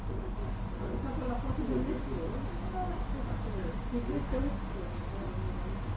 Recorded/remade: recorded